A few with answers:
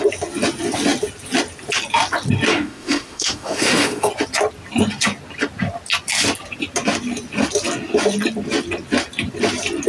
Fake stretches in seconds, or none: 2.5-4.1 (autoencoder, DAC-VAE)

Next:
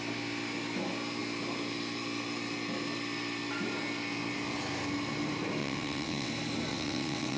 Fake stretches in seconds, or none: 5.6-6.3 (vocoder, WaveNeXt); 6.7-7.4

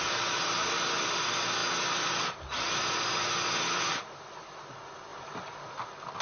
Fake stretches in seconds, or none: none

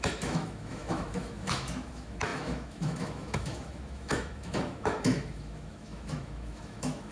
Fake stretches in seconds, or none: 0.0-7.1 (autoencoder, DAC-VAE)